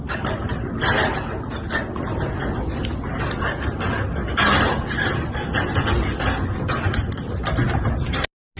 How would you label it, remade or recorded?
recorded